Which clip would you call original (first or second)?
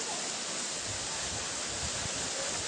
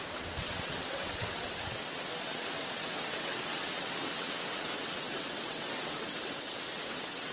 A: first